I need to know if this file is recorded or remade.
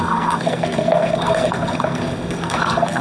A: remade